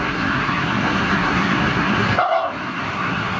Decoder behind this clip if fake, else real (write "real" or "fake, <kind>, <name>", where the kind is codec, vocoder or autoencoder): fake, codec, SNAC